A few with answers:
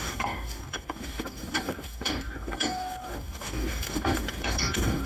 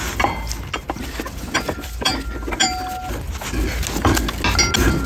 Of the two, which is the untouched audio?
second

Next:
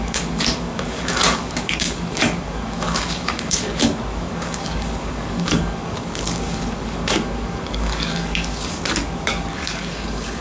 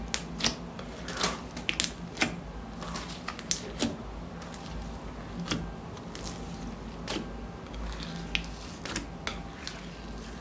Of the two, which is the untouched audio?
second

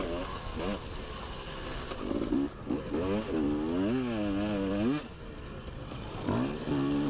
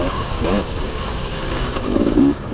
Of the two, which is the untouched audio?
first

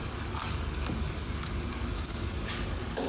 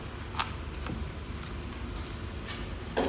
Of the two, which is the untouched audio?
second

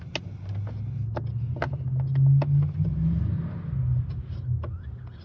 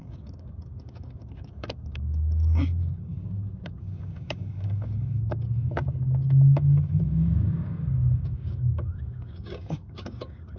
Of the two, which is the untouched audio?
first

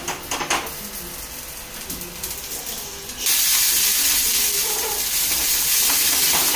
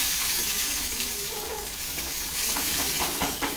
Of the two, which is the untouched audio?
first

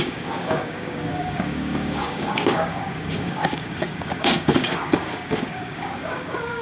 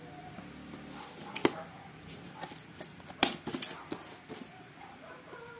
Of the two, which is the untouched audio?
second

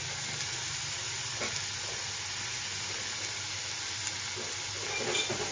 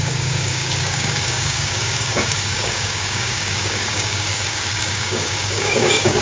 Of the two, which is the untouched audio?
first